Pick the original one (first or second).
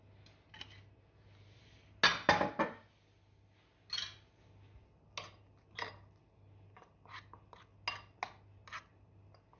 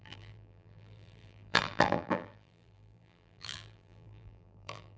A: first